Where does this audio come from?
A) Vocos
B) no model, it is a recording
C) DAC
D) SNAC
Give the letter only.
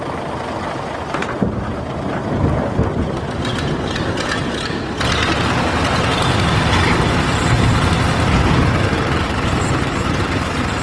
B